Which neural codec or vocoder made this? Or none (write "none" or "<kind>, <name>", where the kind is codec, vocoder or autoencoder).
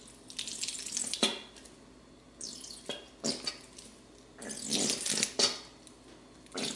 none